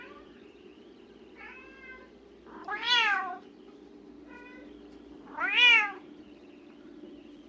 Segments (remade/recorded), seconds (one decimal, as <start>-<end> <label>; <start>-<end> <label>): 0.0-7.5 remade